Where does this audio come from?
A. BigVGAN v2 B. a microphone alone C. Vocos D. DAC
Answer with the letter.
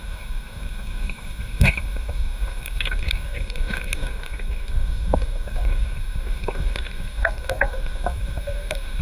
D